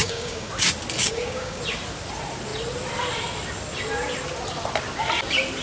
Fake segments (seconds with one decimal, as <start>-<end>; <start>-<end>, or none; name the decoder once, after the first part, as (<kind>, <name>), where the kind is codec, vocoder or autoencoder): 0.0-0.5 (codec, DAC); 1.0-1.6